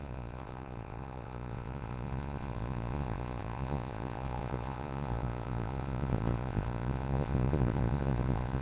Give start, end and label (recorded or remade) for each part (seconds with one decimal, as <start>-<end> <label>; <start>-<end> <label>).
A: 0.0-8.6 remade